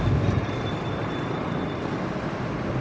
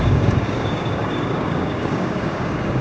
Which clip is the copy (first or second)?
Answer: second